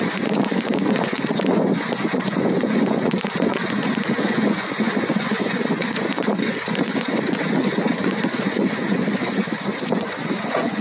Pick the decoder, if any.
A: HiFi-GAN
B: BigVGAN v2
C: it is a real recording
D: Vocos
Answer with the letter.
D